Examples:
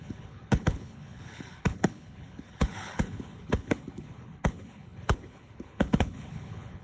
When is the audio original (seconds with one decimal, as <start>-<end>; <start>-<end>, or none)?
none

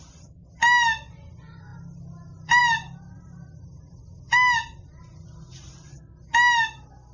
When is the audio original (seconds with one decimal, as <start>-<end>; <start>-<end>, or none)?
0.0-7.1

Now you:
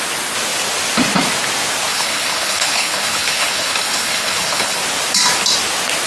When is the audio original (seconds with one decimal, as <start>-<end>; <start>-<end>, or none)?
0.0-1.9; 4.8-6.1